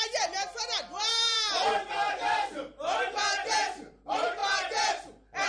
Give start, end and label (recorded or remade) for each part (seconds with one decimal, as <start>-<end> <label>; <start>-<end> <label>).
0.0-1.7 remade; 1.7-3.5 recorded; 3.5-5.5 remade